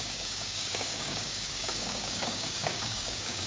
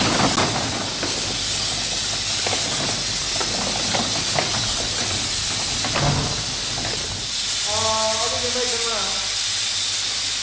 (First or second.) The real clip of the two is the second